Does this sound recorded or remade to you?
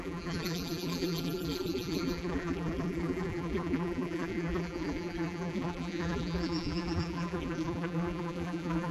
remade